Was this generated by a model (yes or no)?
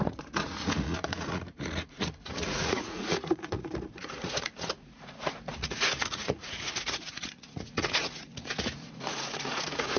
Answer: yes